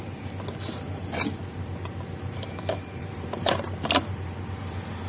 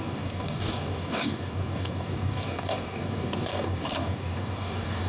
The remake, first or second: second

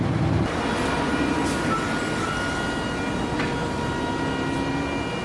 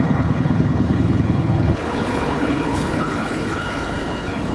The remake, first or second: second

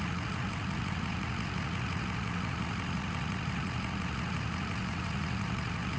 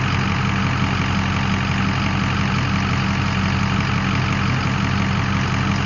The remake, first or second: first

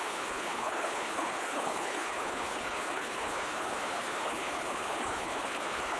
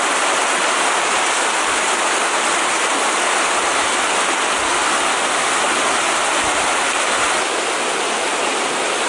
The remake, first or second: first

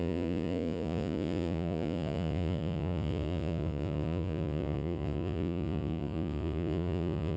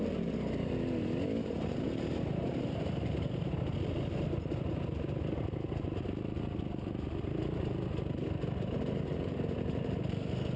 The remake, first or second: first